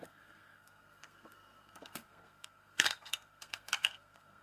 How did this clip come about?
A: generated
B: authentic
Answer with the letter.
A